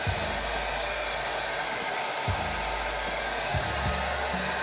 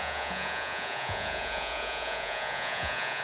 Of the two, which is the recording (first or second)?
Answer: first